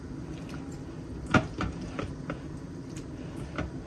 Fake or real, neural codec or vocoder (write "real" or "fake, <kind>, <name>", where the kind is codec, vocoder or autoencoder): real